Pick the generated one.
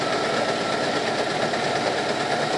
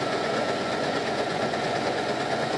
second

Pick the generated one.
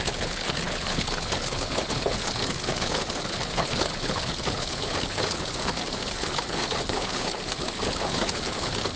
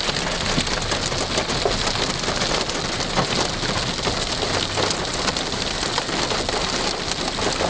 first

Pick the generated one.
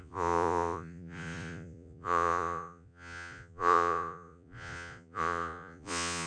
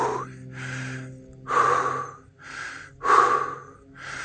first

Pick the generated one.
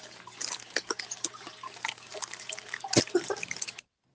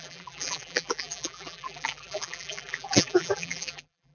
second